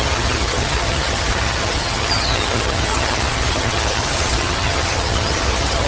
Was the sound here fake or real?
fake